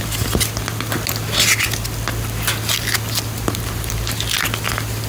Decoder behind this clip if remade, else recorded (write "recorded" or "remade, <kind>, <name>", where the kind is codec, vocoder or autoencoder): recorded